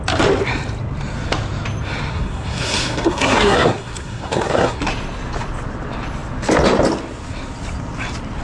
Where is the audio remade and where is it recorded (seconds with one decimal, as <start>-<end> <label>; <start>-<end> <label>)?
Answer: 0.0-2.1 recorded; 2.1-4.9 remade; 4.9-8.4 recorded